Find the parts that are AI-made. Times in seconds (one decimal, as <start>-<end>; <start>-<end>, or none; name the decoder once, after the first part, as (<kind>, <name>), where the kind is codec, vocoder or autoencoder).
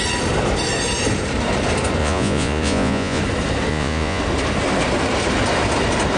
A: 2.0-3.2 (vocoder, Vocos); 3.7-4.2